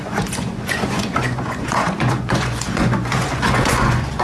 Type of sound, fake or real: fake